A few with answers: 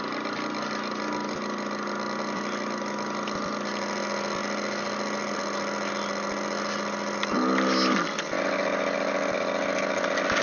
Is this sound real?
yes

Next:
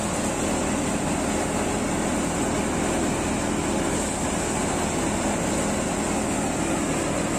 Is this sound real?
yes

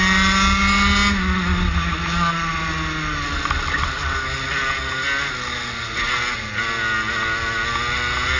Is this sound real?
yes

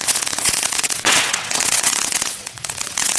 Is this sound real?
no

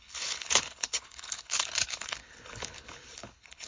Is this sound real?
no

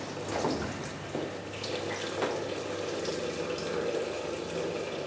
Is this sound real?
yes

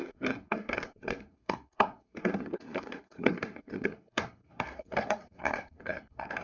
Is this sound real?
no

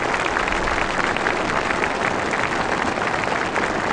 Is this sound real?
yes